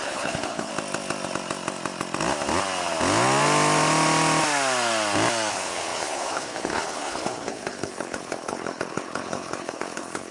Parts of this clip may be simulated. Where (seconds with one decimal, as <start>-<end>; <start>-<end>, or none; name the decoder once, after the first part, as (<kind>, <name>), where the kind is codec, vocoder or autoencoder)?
0.0-0.7 (codec, HILCodec); 5.5-10.3